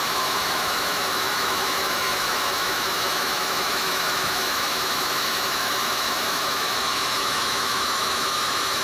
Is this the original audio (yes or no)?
no